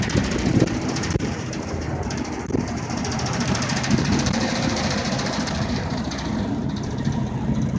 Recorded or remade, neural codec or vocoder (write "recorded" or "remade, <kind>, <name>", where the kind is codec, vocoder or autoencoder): remade, vocoder, BigVGAN v2